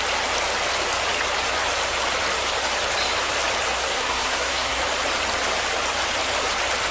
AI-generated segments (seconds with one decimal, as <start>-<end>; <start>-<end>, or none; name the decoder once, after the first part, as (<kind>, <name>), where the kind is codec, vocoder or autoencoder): 3.7-4.8 (codec, SNAC)